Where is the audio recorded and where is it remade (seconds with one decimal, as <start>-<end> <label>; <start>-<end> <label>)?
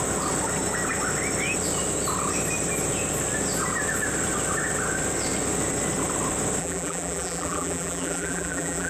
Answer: 0.0-6.6 recorded; 6.6-8.9 remade